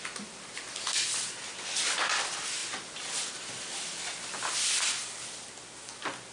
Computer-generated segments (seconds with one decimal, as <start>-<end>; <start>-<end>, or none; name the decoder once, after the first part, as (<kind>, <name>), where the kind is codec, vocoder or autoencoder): 2.6-3.3 (vocoder, BigVGAN v2)